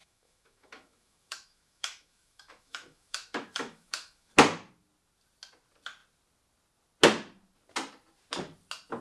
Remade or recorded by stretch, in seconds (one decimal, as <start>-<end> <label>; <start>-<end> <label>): 0.0-4.3 remade; 4.3-9.0 recorded